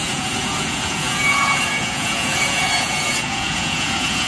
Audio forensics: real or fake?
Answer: fake